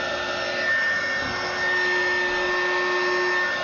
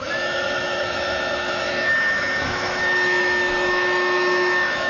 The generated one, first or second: second